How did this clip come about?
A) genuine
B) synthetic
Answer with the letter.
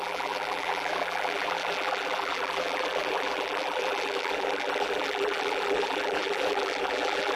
B